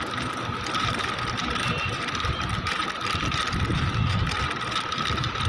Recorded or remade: remade